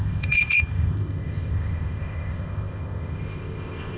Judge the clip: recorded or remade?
remade